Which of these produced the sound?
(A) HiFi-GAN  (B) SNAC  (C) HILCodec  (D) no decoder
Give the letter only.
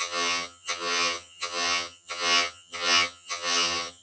A